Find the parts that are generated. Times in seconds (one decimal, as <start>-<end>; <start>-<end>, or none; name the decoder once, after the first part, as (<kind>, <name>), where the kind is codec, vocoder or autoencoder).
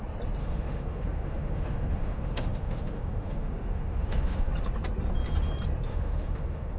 0.4-4.5 (autoencoder, DAC-VAE); 5.9-6.8